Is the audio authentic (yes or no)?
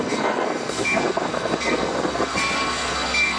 no